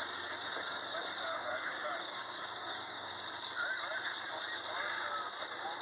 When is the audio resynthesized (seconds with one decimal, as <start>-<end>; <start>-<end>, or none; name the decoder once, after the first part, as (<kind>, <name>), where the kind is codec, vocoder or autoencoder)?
1.3-3.2 (codec, DAC)